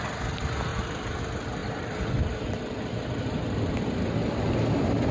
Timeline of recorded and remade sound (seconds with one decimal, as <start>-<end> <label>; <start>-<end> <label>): 0.0-5.1 recorded